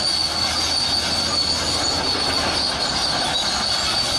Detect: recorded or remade recorded